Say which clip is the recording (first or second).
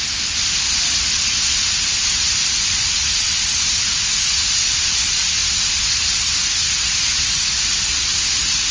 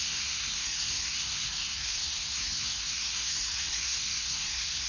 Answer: first